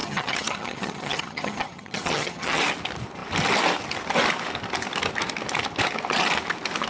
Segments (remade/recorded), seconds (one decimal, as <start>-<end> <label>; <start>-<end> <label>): 0.0-2.6 remade; 2.6-6.9 recorded